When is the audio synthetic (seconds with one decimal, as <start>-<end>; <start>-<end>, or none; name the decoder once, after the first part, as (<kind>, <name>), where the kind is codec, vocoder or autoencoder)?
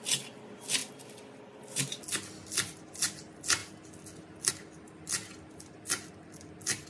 none